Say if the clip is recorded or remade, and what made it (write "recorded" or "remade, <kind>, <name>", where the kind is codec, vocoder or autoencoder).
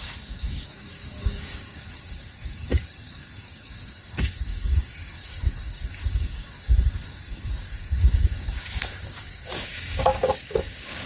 remade, codec, DAC